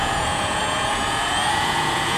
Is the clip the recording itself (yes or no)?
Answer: no